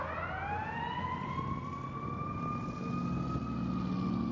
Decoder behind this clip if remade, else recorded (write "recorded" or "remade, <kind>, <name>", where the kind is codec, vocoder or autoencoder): recorded